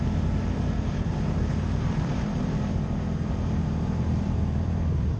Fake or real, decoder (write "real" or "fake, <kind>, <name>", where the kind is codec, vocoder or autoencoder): fake, vocoder, BigVGAN v2